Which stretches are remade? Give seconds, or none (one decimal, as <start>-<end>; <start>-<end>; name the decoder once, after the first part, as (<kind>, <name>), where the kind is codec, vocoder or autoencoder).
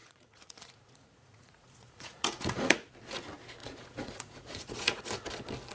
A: 0.0-2.9 (vocoder, Vocos); 3.6-5.0